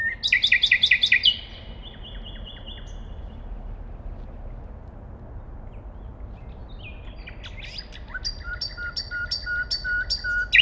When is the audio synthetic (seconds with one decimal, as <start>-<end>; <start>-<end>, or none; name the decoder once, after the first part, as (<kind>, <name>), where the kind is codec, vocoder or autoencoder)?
none